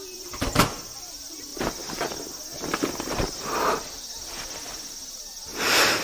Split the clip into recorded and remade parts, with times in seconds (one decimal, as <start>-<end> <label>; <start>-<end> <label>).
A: 0.0-1.5 remade; 1.5-3.7 recorded; 3.7-6.0 remade